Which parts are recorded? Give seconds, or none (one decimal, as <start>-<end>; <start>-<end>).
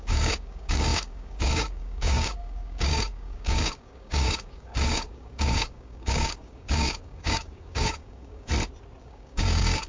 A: 8.5-9.0